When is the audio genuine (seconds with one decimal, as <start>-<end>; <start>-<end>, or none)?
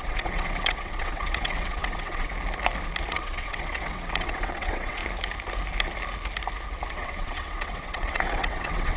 2.3-3.1; 5.0-6.9